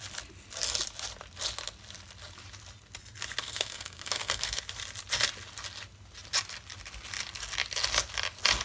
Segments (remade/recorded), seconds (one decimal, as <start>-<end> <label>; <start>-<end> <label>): 0.0-3.4 recorded; 3.4-4.6 remade; 4.6-8.6 recorded